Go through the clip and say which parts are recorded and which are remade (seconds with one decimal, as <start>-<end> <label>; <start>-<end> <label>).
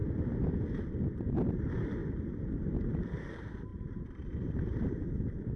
0.0-1.1 recorded; 1.1-2.0 remade; 2.0-2.9 recorded; 2.9-5.6 remade